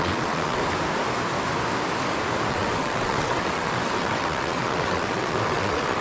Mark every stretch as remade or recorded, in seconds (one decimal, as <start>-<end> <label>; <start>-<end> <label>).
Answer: 0.0-0.6 remade; 0.6-2.5 recorded; 2.5-6.0 remade